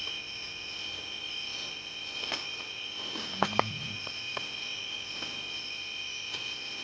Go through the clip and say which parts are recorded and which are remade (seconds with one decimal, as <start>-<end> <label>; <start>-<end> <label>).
0.0-6.8 recorded